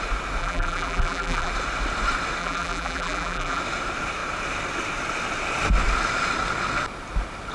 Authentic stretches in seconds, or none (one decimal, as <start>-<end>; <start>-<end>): 0.0-0.4; 1.5-2.4; 3.6-7.5